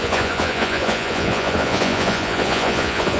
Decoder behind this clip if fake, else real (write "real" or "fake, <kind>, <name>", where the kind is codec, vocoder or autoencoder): fake, vocoder, Vocos